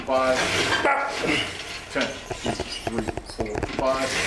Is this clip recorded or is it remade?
recorded